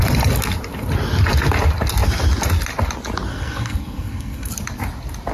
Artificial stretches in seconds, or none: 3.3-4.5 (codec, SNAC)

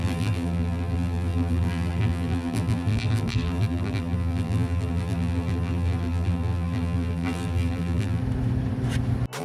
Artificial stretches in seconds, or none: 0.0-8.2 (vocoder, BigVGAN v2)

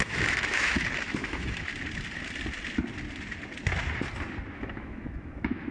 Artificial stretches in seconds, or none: 0.0-1.7 (autoencoder, DAC-VAE); 4.5-5.7

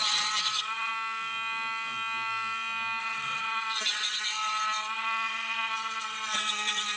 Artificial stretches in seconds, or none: 0.0-0.9 (vocoder, WaveNeXt); 3.0-7.0